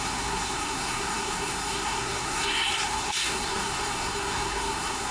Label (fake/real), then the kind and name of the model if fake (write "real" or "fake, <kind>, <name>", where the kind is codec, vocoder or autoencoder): fake, codec, SNAC